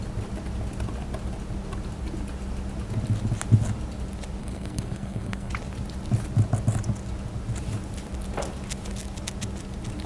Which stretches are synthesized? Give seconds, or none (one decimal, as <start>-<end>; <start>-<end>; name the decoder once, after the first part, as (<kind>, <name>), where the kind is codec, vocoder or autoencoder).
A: 4.4-5.5 (codec, SNAC)